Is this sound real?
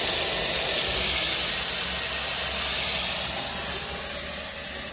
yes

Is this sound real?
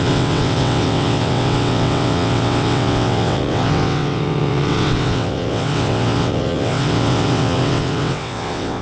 no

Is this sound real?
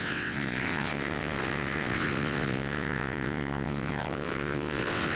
no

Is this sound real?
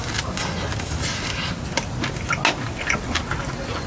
yes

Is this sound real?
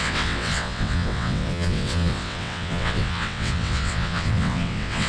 no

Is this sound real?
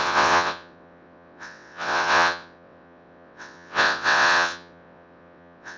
no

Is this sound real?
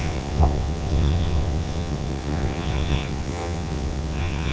no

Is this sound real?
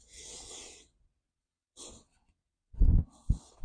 no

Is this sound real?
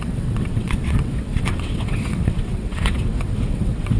no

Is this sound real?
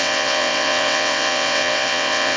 no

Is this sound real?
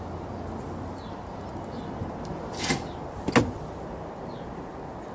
yes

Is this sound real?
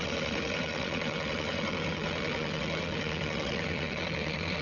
no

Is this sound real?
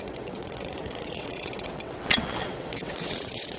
no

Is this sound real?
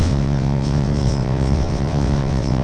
no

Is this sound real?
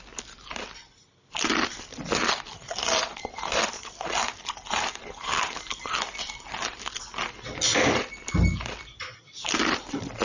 yes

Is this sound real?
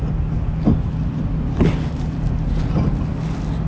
yes